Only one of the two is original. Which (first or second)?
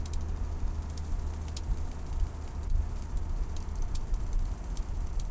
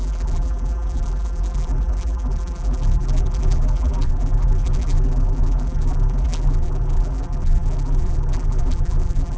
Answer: first